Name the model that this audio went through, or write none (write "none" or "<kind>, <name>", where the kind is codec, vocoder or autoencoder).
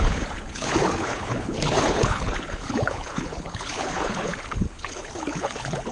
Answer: codec, HILCodec